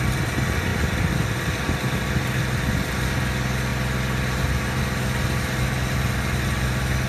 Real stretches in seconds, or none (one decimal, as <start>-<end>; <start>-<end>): 0.0-7.1